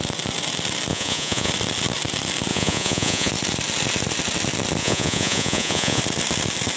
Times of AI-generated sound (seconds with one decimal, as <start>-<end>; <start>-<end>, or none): 0.9-1.5; 2.5-3.3; 4.8-6.0

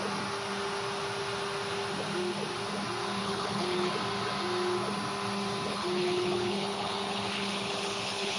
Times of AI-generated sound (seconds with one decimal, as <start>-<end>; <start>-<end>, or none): 3.2-3.9; 5.7-8.4

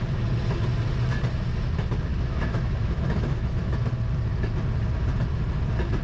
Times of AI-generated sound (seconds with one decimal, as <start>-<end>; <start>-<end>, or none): 2.1-3.9

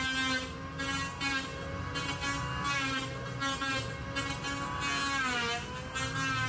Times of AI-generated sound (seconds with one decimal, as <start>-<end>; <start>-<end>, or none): none

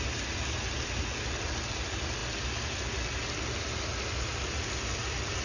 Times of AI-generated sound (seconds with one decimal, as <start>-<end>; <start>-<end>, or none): none

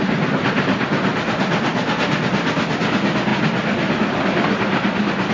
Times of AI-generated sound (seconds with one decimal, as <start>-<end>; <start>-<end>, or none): none

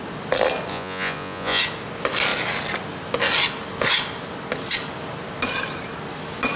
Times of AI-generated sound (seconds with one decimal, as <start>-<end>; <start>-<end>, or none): 0.7-1.6